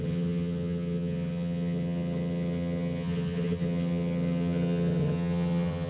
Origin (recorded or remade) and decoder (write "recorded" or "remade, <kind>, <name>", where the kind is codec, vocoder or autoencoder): remade, vocoder, HiFi-GAN